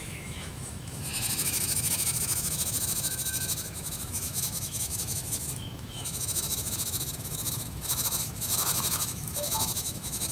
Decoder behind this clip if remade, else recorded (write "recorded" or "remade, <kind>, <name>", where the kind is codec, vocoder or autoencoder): remade, autoencoder, DAC-VAE